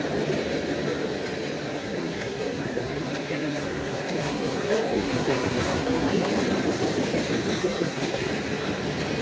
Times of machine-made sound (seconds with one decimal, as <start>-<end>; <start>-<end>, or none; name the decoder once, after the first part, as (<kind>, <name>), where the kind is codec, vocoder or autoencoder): 1.7-6.3 (codec, SNAC); 7.6-8.3